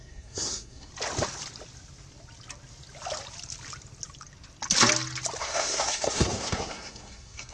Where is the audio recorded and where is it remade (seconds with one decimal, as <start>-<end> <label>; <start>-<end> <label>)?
0.0-0.9 remade; 0.9-5.4 recorded; 5.4-7.5 remade